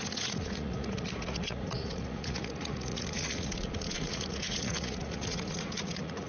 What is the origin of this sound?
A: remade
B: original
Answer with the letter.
A